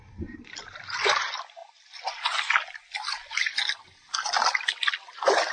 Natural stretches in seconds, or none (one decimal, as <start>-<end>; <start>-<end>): 0.0-5.5